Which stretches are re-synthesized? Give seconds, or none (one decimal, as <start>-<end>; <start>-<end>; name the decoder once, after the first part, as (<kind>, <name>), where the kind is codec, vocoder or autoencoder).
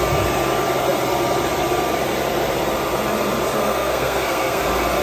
3.6-4.6 (codec, SNAC)